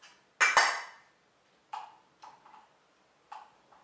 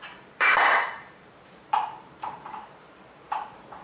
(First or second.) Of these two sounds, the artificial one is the second